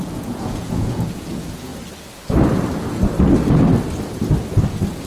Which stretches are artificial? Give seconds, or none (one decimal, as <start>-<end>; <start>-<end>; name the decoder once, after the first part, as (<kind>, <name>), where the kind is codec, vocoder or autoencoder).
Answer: 0.0-1.7 (vocoder, Vocos)